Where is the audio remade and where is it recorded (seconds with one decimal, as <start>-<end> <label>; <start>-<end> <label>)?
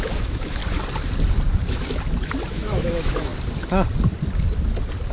0.0-0.6 remade; 0.6-2.5 recorded; 2.5-3.3 remade; 3.3-5.1 recorded